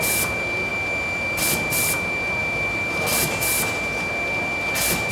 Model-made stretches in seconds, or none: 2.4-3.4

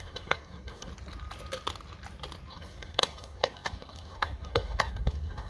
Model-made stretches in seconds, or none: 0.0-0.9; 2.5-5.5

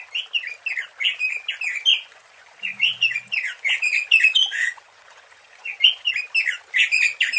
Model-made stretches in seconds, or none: 1.9-6.1

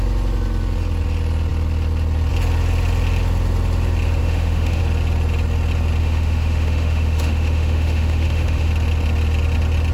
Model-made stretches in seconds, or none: 4.2-4.8; 6.0-8.7

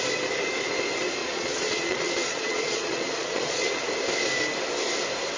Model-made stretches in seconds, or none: 1.2-3.7